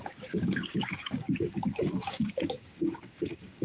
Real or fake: fake